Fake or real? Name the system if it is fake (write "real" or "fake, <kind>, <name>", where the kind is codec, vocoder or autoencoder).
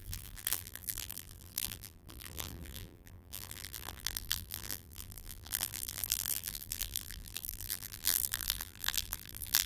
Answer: fake, vocoder, BigVGAN v2